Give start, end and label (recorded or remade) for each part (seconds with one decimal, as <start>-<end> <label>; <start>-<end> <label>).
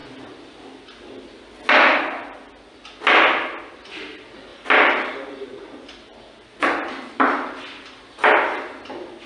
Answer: 0.0-4.5 recorded; 4.5-6.9 remade; 6.9-9.3 recorded